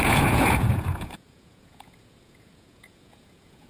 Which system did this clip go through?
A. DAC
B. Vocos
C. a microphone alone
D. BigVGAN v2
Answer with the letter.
B